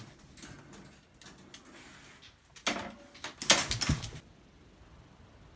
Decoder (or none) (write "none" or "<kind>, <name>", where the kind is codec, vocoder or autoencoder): none